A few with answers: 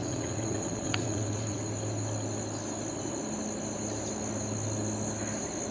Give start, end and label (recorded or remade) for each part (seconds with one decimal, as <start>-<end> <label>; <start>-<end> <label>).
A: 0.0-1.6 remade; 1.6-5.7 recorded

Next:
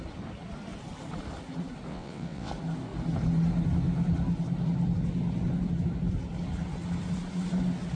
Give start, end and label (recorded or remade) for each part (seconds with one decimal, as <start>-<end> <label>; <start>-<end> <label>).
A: 0.0-1.9 recorded; 1.9-2.5 remade; 2.5-8.0 recorded

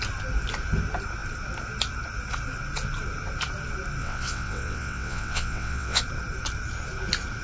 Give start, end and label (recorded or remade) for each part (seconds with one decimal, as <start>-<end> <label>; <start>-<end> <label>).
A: 0.0-4.0 recorded; 4.0-6.0 remade; 6.0-7.4 recorded